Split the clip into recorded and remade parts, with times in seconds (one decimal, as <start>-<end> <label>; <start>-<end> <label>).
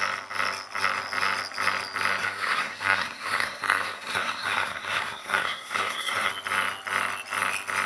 0.0-2.2 recorded; 2.2-6.3 remade; 6.3-7.9 recorded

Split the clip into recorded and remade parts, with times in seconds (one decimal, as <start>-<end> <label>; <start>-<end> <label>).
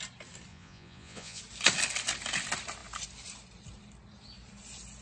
0.0-0.5 recorded; 0.5-1.4 remade; 1.4-5.0 recorded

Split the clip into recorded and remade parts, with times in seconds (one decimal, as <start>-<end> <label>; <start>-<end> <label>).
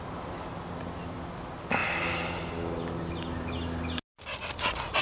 0.0-5.0 recorded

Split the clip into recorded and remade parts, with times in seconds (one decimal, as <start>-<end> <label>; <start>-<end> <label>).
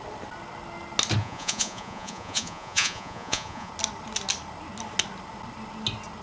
0.0-1.2 recorded; 1.2-3.7 remade; 3.7-6.2 recorded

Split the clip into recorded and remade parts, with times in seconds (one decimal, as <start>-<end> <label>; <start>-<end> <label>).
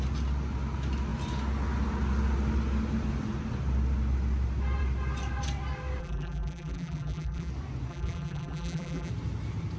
0.0-6.0 recorded; 6.0-7.5 remade; 7.5-7.9 recorded; 7.9-9.1 remade; 9.1-9.8 recorded